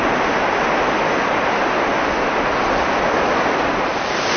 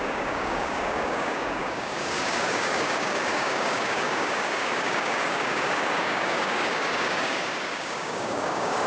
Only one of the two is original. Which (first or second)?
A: first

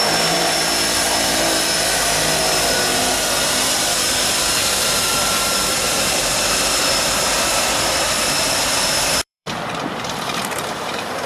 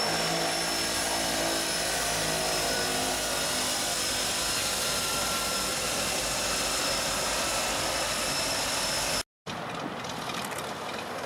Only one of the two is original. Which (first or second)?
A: second